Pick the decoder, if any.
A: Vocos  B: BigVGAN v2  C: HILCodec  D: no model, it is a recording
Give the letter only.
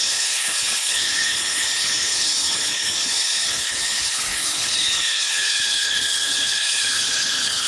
C